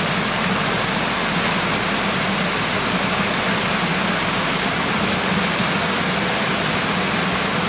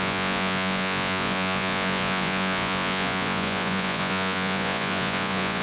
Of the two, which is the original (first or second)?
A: first